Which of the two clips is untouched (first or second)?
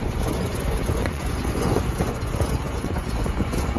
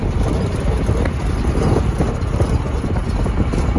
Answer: second